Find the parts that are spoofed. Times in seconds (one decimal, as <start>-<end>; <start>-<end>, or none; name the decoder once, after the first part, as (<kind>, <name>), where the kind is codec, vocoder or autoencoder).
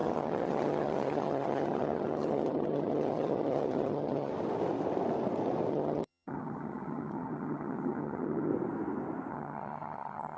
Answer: 0.0-4.3 (vocoder, HiFi-GAN); 5.7-8.5; 9.3-10.4